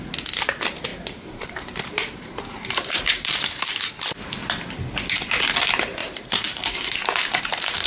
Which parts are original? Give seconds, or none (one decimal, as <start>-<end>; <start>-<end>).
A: 0.0-0.9; 3.9-6.0; 7.4-7.9